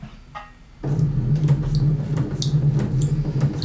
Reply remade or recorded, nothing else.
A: recorded